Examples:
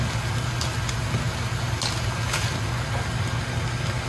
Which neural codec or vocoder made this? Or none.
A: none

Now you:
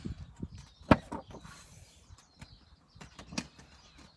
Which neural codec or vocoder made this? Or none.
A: none